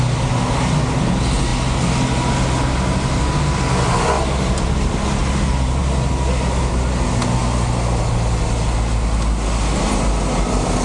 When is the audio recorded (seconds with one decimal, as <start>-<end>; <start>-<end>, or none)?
0.0-10.8